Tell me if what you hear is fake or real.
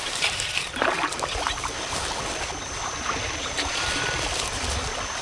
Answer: fake